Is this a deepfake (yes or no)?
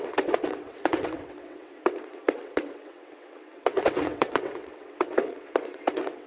yes